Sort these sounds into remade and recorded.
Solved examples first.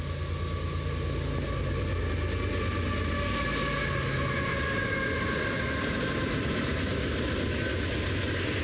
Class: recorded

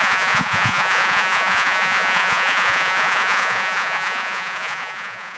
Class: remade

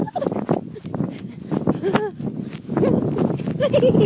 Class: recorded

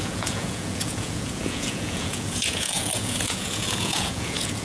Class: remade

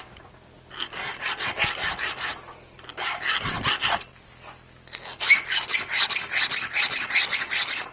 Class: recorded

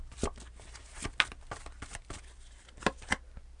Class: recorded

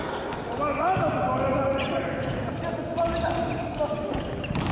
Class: recorded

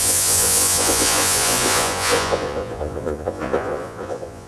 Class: remade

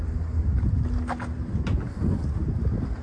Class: recorded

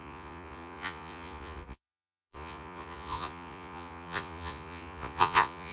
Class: remade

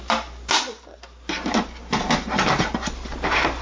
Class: recorded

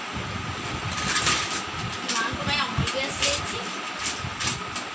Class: recorded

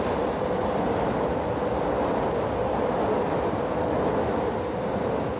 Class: recorded